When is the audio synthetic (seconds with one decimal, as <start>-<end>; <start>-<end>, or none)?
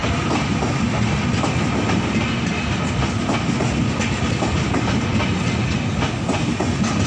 none